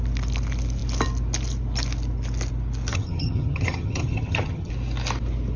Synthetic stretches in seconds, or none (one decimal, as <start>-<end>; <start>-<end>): 2.9-4.7